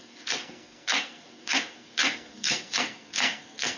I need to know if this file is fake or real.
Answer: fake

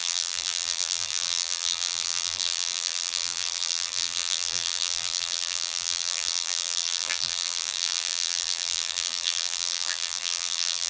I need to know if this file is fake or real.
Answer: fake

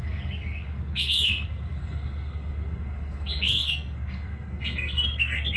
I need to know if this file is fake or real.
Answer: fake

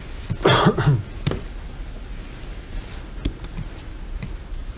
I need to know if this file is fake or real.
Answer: real